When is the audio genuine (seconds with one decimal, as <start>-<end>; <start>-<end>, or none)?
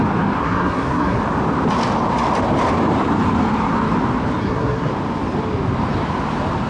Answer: 0.0-0.4; 1.2-4.4; 4.9-6.7